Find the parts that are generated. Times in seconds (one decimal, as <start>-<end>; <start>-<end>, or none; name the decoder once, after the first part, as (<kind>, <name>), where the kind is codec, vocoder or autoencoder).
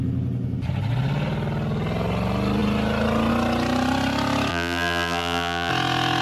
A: 4.5-5.7 (vocoder, BigVGAN v2)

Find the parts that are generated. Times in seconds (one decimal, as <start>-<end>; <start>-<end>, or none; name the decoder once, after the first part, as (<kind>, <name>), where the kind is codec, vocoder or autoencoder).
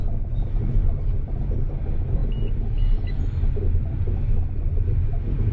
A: none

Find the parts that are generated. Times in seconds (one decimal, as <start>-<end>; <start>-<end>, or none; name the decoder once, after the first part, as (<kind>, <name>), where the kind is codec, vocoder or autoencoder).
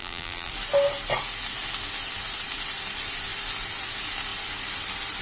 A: 0.0-0.5 (vocoder, BigVGAN v2)